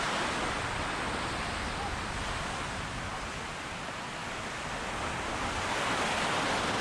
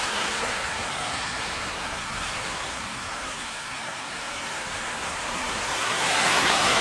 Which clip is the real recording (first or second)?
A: first